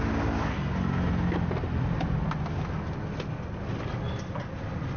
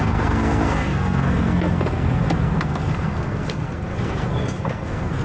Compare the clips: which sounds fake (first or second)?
second